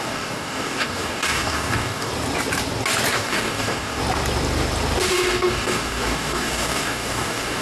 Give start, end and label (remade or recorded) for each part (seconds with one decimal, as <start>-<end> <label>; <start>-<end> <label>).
0.0-2.1 remade; 2.1-3.1 recorded; 3.1-4.0 remade; 4.0-5.0 recorded; 5.0-7.6 remade